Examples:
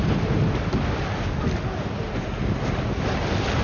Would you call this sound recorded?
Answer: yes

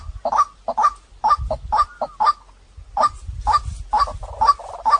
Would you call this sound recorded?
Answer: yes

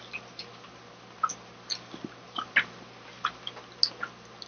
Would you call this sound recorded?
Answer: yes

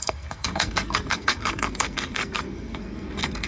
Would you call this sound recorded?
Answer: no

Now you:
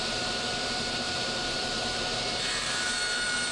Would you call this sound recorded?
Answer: no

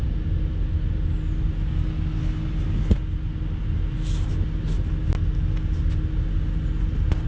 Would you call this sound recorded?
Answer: yes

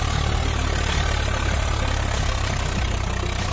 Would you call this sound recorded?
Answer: yes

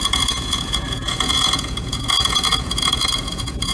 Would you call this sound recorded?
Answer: no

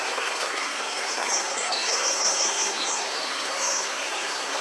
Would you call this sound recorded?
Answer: no